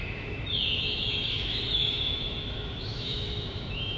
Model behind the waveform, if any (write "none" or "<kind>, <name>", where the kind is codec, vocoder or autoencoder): autoencoder, DAC-VAE